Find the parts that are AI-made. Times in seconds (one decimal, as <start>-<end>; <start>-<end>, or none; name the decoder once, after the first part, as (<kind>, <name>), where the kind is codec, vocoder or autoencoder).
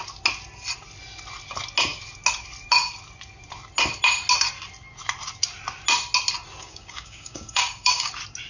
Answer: 6.6-8.1 (codec, DAC)